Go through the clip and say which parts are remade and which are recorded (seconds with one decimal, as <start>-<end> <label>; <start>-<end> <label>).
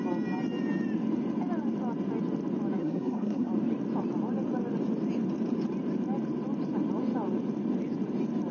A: 0.0-2.8 recorded; 2.8-3.5 remade; 3.5-8.5 recorded